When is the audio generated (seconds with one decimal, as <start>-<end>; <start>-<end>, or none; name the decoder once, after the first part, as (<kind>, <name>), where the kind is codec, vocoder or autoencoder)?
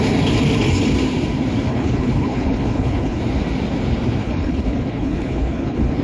1.7-3.2 (codec, HILCodec); 4.2-6.0